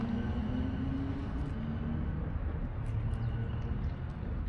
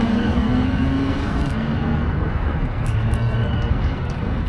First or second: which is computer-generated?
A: second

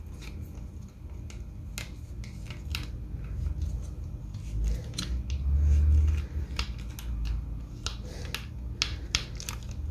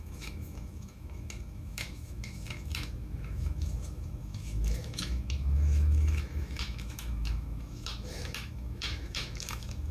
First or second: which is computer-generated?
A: second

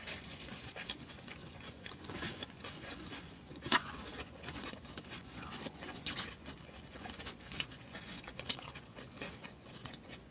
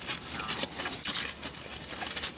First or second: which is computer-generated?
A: first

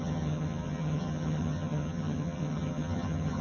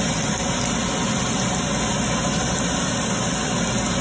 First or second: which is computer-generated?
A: first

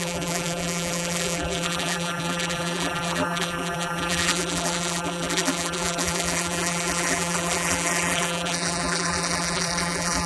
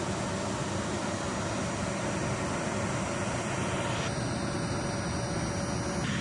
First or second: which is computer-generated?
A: first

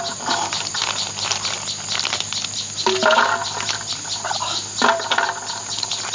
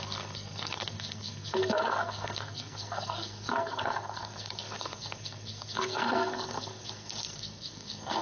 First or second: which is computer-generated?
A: second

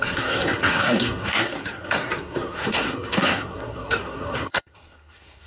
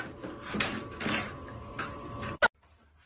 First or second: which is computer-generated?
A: first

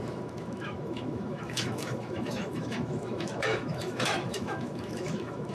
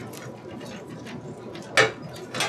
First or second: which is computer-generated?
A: first